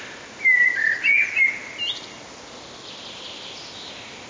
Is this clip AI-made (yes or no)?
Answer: no